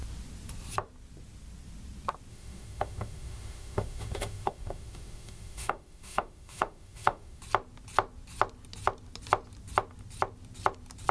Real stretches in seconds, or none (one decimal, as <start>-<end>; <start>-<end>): 0.0-2.3; 7.4-11.1